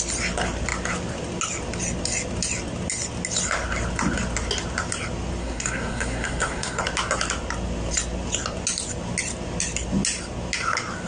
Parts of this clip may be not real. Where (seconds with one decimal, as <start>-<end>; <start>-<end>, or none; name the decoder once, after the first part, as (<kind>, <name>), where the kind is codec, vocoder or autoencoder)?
5.4-6.8 (codec, SNAC)